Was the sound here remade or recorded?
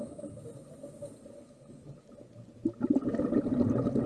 recorded